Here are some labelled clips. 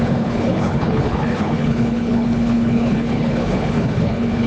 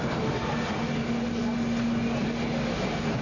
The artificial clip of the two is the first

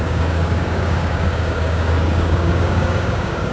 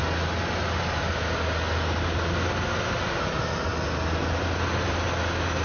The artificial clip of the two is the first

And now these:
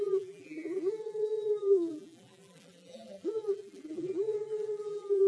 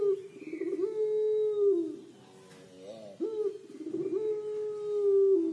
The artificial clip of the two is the first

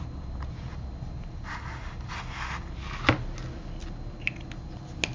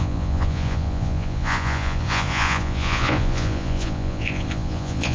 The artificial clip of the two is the second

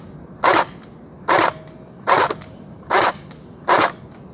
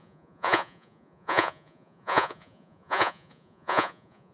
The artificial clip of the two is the second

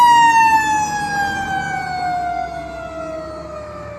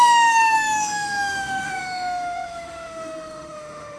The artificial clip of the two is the second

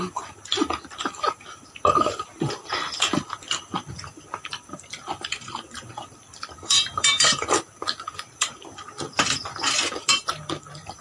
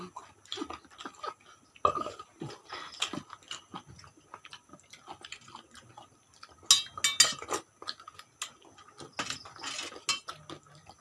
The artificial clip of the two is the first